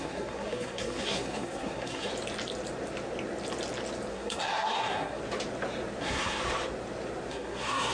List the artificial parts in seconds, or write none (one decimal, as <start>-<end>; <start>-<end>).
0.0-2.1; 4.1-5.2; 6.0-6.4; 7.3-7.9